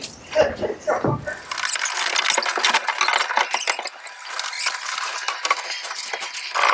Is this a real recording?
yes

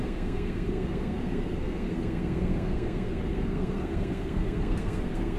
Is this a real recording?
no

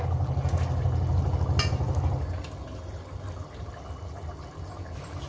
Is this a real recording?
yes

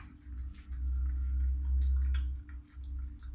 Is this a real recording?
yes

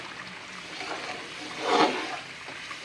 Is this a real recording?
yes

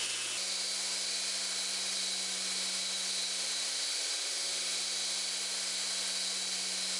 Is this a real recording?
yes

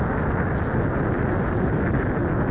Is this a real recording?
yes